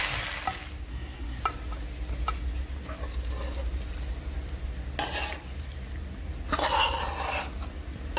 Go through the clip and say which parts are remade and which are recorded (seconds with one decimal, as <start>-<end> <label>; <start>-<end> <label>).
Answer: 0.0-0.9 recorded; 0.9-1.4 remade; 1.4-8.2 recorded